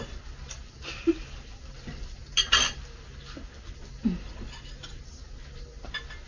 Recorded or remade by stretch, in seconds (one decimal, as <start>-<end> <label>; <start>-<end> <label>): 0.0-6.3 recorded